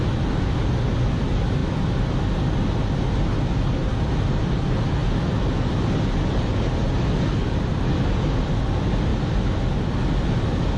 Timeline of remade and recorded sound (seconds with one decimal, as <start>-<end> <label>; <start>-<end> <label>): 0.0-10.8 recorded